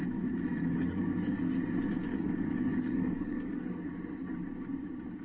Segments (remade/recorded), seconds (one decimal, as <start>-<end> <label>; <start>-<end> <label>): 0.0-0.6 recorded; 0.6-1.4 remade; 1.4-2.0 recorded; 2.0-3.7 remade; 3.7-5.2 recorded